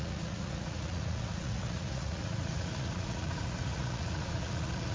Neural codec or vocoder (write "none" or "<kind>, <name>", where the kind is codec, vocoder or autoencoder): vocoder, Vocos